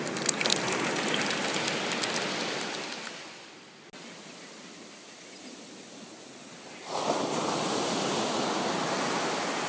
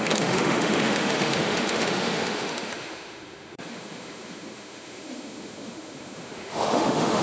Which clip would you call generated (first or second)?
second